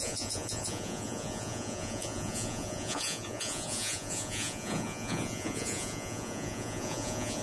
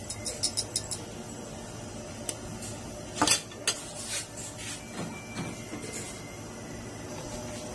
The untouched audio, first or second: second